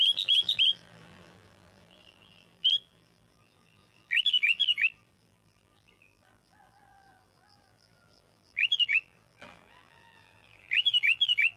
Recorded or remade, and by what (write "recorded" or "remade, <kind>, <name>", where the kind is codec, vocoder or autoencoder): remade, vocoder, BigVGAN v2